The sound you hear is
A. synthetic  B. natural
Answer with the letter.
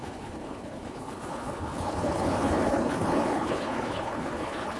A